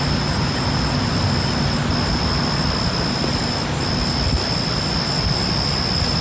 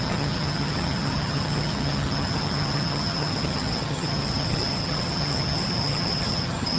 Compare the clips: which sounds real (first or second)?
first